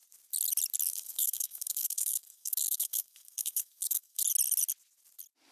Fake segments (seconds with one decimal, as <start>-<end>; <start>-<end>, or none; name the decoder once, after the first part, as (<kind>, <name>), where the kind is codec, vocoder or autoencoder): 0.9-4.2 (codec, SNAC)